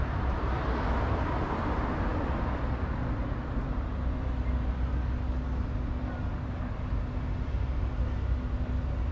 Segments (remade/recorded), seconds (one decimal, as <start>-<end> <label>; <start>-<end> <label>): 0.0-9.1 recorded